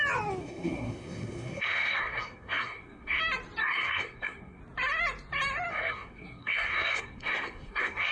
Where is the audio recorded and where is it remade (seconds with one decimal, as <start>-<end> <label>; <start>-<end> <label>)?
0.0-0.4 recorded; 0.4-3.2 remade; 3.2-3.6 recorded; 3.6-4.6 remade; 4.6-5.7 recorded; 5.7-8.1 remade